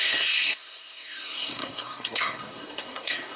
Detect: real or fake fake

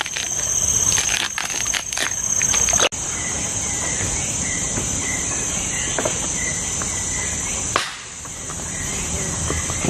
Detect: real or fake real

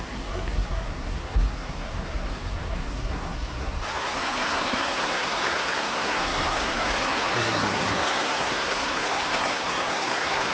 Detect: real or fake fake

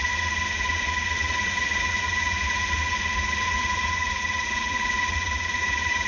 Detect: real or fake fake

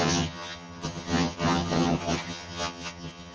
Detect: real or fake fake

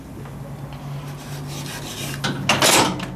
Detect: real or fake real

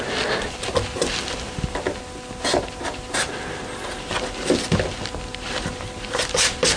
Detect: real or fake real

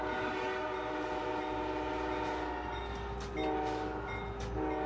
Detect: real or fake real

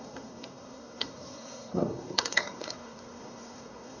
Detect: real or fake fake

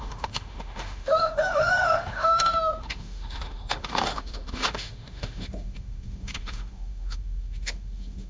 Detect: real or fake fake